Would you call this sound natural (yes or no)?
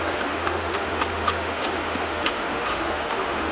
no